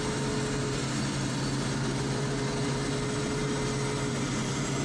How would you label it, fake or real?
real